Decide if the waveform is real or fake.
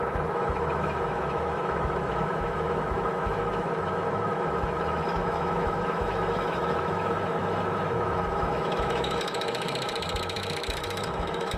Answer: fake